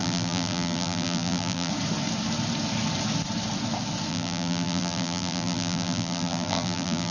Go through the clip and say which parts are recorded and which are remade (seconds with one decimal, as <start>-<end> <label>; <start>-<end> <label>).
0.0-1.7 remade; 1.7-4.1 recorded; 4.1-7.1 remade